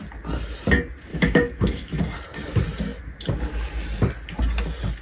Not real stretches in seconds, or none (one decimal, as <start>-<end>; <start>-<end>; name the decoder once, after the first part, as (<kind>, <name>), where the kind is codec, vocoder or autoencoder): 1.1-2.0 (autoencoder, DAC-VAE)